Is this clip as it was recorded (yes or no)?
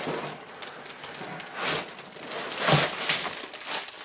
yes